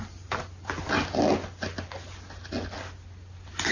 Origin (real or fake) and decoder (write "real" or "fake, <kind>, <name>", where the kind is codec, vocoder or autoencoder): real